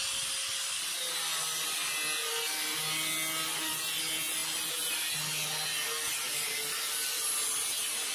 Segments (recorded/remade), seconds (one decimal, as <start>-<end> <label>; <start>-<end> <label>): 0.0-8.1 recorded

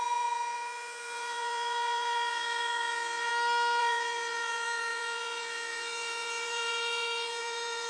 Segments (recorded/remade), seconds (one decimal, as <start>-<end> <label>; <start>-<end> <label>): 0.0-3.3 remade; 3.3-3.8 recorded; 3.8-7.9 remade

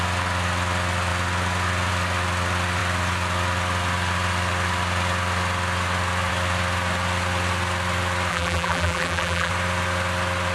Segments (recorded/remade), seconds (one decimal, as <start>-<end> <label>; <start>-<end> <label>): 0.0-8.3 recorded; 8.3-9.5 remade; 9.5-10.5 recorded

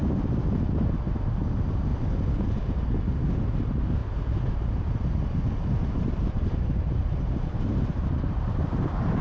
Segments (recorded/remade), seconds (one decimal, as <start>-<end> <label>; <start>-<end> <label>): 0.0-1.4 recorded; 1.4-1.9 remade; 1.9-3.4 recorded; 3.4-4.0 remade; 4.0-6.0 recorded; 6.0-9.2 remade

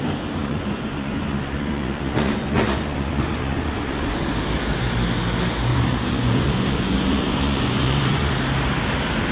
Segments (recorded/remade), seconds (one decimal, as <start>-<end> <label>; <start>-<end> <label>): 0.0-0.4 recorded; 0.4-4.3 remade; 4.3-5.7 recorded; 5.7-8.3 remade; 8.3-9.3 recorded

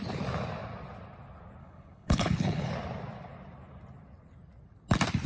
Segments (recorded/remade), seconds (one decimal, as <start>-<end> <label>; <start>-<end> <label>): 0.0-1.6 recorded; 1.6-2.7 remade; 2.7-5.3 recorded

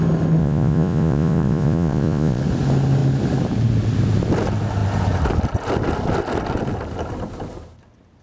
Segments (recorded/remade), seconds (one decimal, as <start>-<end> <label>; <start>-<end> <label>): 0.0-0.4 recorded; 0.4-2.4 remade; 2.4-8.2 recorded

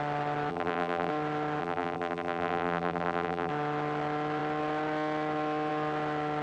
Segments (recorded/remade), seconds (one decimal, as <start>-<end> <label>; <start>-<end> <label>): 0.0-0.5 recorded; 0.5-1.1 remade; 1.1-1.6 recorded; 1.6-3.5 remade; 3.5-6.4 recorded